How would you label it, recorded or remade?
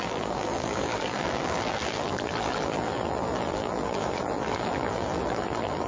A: remade